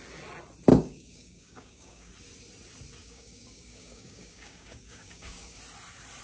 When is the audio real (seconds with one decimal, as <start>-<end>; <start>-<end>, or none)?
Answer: 0.0-0.7; 2.1-3.0; 5.6-6.2